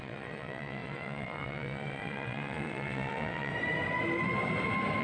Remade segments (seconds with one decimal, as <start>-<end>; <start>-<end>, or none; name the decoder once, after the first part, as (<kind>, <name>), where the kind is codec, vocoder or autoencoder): 0.0-3.5 (vocoder, WaveNeXt)